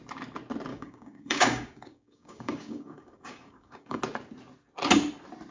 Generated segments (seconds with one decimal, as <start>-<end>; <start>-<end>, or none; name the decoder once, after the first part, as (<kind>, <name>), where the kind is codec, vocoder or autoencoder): 0.7-4.0 (codec, DAC)